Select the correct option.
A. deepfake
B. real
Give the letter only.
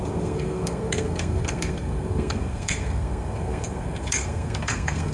A